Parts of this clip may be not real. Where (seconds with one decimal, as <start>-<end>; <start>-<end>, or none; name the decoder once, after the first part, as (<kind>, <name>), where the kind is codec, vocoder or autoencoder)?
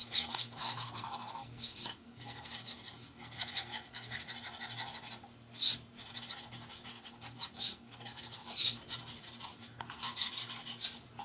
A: 0.0-4.3 (codec, SNAC); 6.9-8.8; 9.5-10.3